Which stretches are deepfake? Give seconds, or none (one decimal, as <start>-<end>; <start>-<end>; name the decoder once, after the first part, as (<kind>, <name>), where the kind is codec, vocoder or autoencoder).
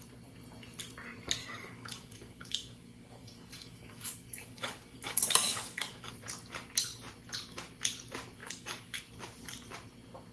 1.4-6.1 (codec, DAC); 8.4-9.0